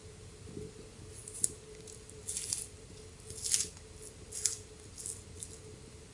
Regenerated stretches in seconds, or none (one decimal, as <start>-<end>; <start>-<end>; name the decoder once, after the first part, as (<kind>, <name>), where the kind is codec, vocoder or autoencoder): none